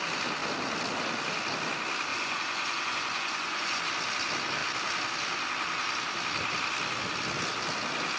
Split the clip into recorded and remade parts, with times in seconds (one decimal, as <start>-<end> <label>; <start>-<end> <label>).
0.0-2.1 recorded; 2.1-3.8 remade; 3.8-8.2 recorded